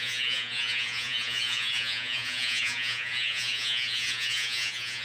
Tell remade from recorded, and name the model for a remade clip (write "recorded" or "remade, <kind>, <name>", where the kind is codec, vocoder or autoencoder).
remade, vocoder, Vocos